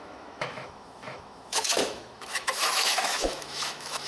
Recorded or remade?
remade